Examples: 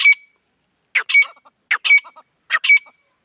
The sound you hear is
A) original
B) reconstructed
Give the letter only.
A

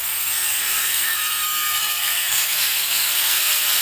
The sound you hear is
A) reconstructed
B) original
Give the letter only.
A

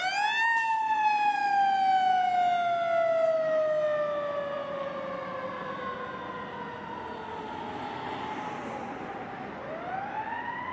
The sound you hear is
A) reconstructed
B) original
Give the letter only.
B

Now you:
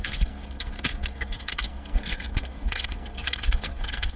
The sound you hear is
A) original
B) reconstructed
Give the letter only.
B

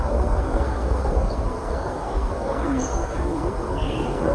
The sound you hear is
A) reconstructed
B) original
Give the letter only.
A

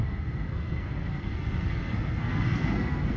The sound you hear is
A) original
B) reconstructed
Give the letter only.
B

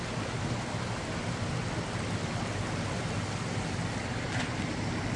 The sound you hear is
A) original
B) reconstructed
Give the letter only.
A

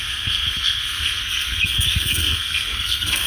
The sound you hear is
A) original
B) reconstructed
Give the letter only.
B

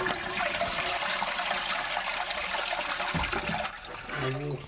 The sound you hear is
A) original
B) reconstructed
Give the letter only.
A